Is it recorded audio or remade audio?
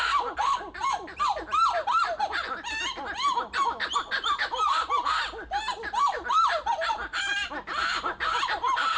recorded